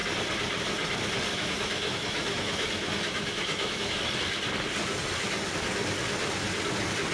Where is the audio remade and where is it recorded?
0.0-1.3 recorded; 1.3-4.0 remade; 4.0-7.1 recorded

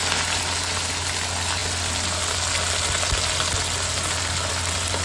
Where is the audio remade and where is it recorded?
0.0-5.0 recorded

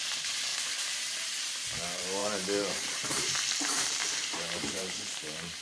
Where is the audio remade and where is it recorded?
0.0-5.6 remade

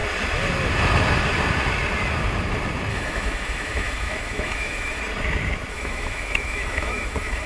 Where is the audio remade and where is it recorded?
0.0-2.9 recorded; 2.9-5.0 remade; 5.0-5.7 recorded; 5.7-7.5 remade

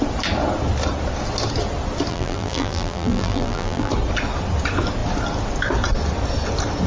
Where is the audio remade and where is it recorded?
0.0-2.1 recorded; 2.1-3.9 remade; 3.9-6.9 recorded